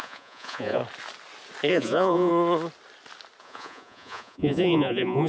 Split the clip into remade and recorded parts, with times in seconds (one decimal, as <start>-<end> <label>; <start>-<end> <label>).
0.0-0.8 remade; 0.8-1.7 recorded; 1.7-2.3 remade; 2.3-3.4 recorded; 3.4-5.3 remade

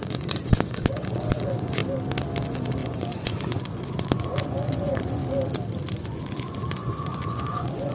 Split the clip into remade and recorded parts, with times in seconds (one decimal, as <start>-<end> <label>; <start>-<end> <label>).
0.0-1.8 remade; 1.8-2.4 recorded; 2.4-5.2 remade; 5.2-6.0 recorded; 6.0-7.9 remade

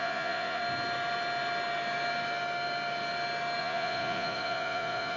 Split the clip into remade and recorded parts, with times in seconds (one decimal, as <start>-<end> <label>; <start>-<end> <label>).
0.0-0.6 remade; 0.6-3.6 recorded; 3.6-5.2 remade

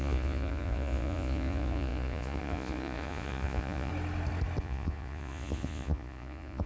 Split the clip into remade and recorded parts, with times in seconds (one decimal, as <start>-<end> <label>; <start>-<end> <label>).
0.0-3.9 remade; 3.9-4.6 recorded; 4.6-6.7 remade

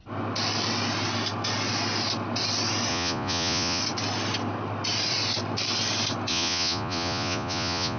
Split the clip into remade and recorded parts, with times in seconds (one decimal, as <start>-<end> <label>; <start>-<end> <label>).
0.0-2.9 recorded; 2.9-3.8 remade; 3.8-6.3 recorded; 6.3-8.0 remade